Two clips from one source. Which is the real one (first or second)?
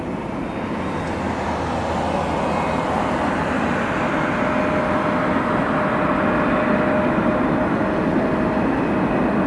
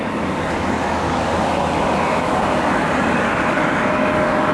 first